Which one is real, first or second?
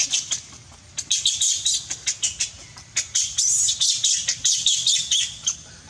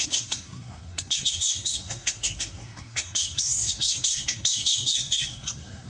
first